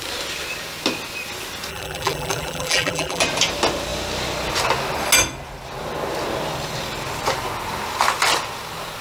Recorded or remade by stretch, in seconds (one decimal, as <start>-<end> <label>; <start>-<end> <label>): 0.0-1.7 recorded; 1.7-3.2 remade; 3.2-9.0 recorded